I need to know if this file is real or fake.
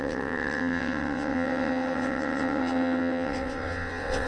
fake